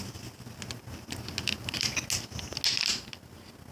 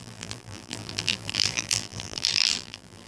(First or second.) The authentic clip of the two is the first